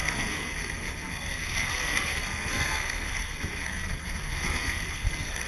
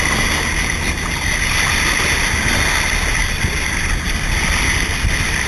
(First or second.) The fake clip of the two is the first